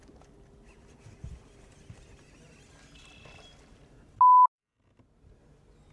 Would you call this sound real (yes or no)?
yes